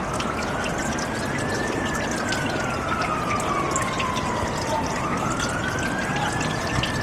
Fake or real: real